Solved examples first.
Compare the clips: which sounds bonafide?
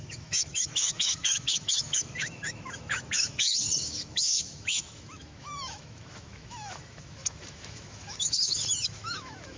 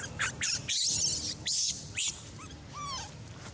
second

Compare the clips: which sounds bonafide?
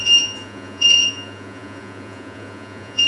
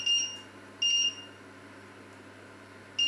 second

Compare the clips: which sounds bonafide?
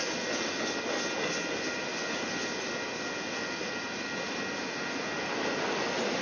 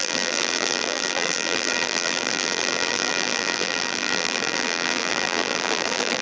first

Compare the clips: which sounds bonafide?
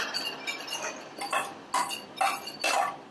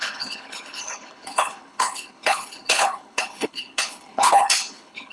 first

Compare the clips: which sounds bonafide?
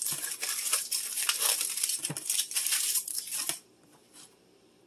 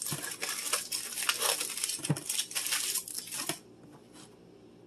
second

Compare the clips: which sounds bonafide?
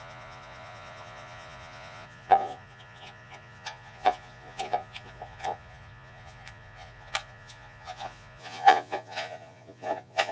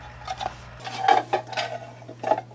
second